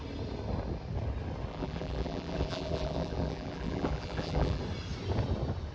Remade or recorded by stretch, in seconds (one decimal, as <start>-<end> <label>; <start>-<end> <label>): 0.0-1.5 recorded; 1.5-4.6 remade; 4.6-5.7 recorded